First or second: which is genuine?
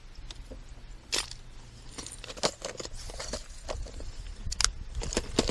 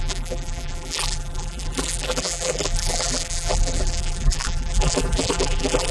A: first